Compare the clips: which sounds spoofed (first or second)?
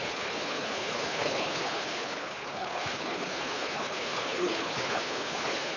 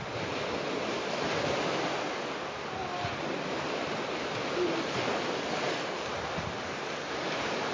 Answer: first